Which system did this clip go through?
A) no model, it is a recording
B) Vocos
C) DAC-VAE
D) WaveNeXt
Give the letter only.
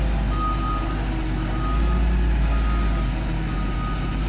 A